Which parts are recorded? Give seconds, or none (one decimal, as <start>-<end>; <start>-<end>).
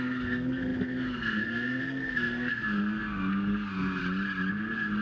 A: 4.0-4.5